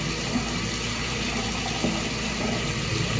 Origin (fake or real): real